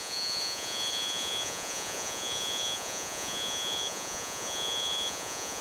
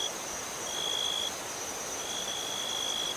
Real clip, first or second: second